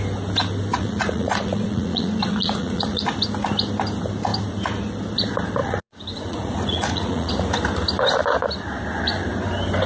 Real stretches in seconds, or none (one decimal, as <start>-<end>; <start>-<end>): 0.0-0.7; 3.0-5.6; 7.3-9.9